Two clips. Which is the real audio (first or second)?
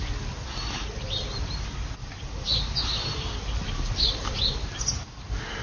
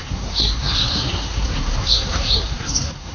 first